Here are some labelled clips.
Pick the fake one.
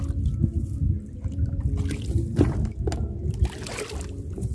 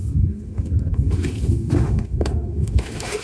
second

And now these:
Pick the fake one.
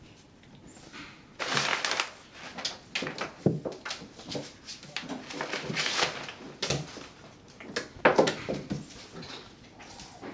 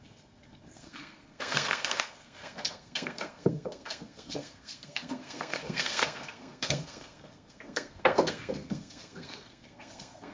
second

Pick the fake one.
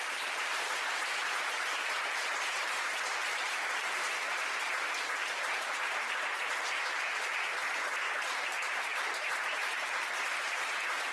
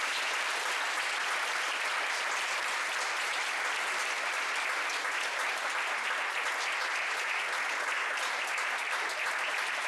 first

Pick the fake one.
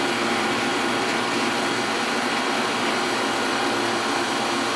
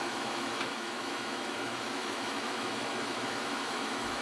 second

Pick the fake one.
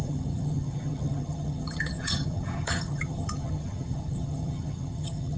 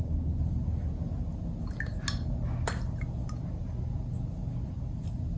first